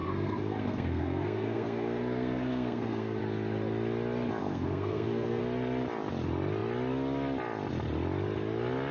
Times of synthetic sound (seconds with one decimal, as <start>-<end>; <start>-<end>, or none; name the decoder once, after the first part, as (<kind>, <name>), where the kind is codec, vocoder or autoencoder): 0.0-3.2 (codec, SNAC); 4.4-5.4